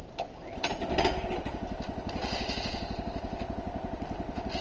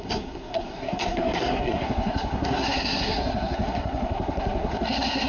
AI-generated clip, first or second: second